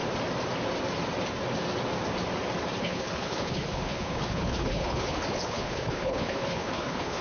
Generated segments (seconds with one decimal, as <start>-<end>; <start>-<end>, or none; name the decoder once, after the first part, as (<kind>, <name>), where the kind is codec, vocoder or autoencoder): 2.8-7.2 (codec, HILCodec)